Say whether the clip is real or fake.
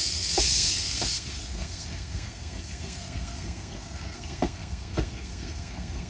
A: fake